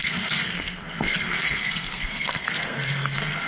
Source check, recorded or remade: remade